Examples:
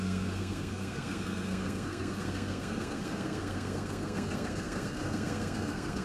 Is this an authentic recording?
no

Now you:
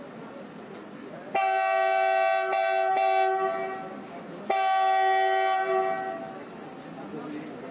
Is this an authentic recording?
yes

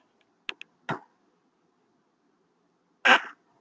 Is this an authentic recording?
yes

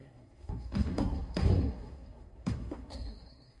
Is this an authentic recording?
no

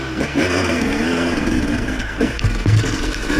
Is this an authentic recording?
no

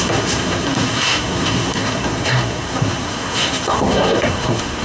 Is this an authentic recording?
no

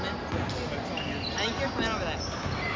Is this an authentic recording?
yes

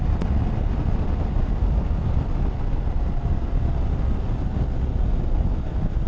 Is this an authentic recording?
yes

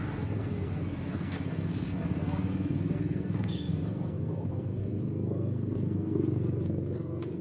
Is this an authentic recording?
no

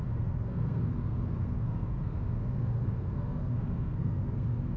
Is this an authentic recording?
no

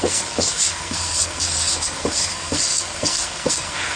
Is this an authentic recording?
no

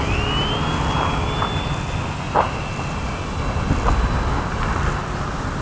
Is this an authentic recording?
yes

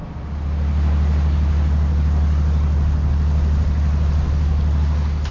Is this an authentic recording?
yes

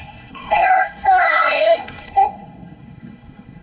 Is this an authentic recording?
no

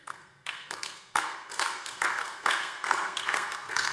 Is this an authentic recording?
no